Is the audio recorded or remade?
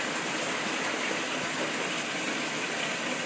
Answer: recorded